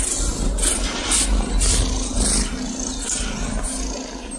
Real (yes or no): yes